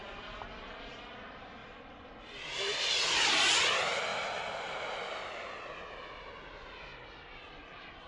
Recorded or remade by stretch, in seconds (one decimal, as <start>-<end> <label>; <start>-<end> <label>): 0.0-1.6 recorded; 1.6-2.1 remade; 2.1-8.1 recorded